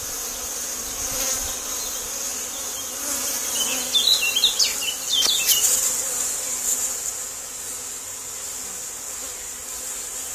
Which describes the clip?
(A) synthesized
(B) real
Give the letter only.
B